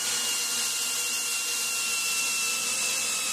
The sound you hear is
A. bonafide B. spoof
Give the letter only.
A